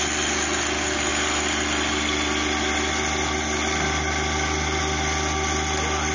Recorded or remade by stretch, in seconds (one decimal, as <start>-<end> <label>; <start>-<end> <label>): 0.0-6.1 recorded